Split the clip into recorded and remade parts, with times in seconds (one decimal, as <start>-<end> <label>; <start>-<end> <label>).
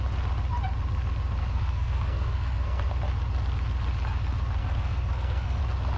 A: 0.0-1.4 recorded; 1.4-2.9 remade; 2.9-4.6 recorded; 4.6-5.6 remade; 5.6-6.0 recorded